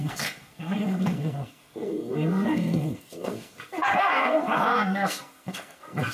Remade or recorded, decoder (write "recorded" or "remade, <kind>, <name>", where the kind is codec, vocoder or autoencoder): remade, codec, SNAC